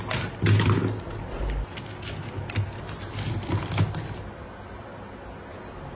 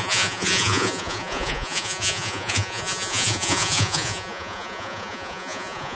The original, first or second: first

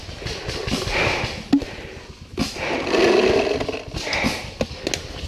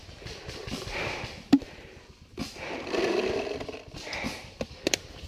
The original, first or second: first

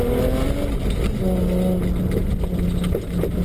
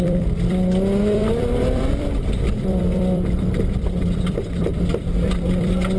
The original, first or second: first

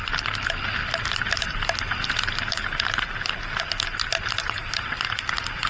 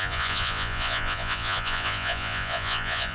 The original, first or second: first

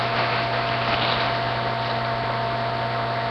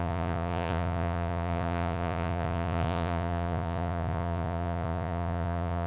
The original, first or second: first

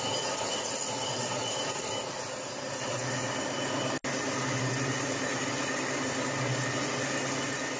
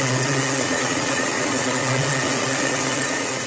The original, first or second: first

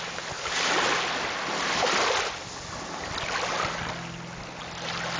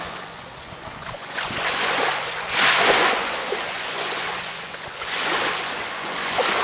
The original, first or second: first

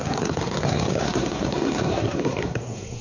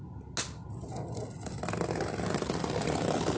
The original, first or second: second